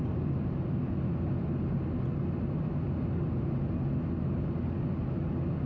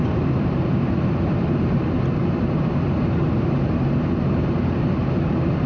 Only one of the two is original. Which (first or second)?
first